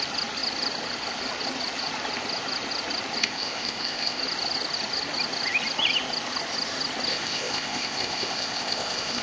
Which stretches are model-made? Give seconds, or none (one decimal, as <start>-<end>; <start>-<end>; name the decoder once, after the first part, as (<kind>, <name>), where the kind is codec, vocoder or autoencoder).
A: 3.2-4.2 (codec, ZipCodec); 7.1-9.2